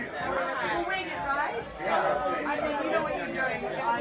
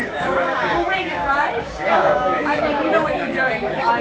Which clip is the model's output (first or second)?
second